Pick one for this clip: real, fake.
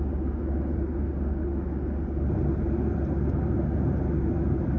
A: real